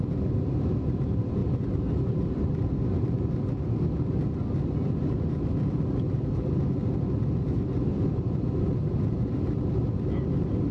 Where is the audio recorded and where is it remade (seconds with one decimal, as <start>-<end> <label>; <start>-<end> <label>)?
0.0-10.7 recorded